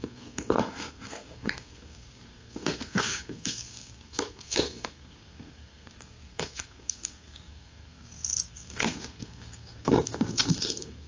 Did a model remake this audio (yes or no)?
yes